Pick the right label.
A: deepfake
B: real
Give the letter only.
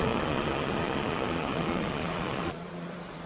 A